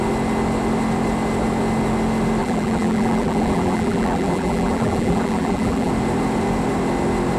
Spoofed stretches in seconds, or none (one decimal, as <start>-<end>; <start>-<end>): 2.4-5.9